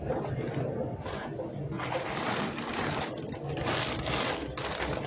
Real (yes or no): yes